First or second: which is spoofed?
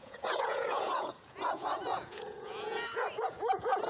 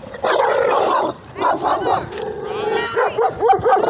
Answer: first